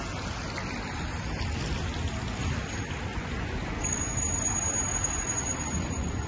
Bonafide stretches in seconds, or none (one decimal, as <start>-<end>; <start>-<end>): 0.0-3.1; 4.2-4.9